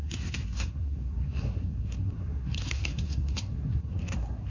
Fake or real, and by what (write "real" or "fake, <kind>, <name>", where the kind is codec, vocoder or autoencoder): fake, codec, SNAC